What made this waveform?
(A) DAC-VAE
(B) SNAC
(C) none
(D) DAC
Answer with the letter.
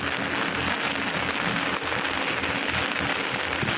C